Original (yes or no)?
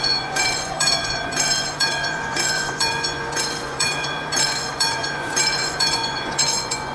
no